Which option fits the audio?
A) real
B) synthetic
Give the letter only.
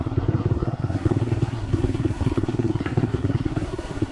B